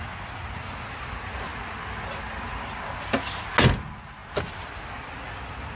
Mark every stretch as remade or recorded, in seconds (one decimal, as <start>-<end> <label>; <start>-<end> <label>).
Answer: 0.0-5.8 recorded